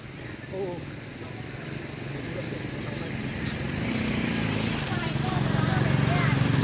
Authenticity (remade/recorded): recorded